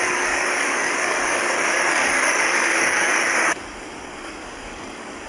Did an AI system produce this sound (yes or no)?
yes